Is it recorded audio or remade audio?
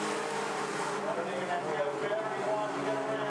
recorded